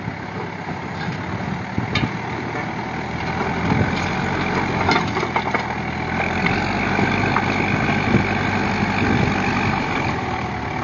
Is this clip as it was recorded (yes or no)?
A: yes